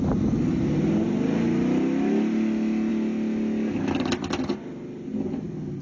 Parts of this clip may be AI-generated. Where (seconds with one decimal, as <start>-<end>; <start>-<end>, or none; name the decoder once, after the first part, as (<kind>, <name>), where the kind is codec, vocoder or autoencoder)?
none